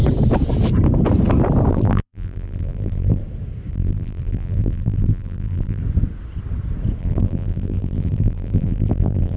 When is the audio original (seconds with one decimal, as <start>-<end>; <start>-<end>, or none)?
0.0-1.7; 3.2-3.7; 5.8-7.0